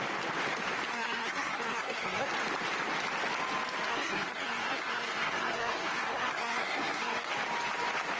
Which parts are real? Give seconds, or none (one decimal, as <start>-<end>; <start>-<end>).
0.0-0.9; 2.3-3.9; 7.3-8.2